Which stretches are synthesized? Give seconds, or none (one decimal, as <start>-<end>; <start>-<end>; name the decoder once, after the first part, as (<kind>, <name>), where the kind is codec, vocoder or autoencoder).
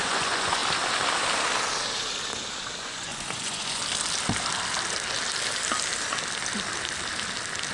0.0-0.6 (vocoder, Vocos); 2.8-3.8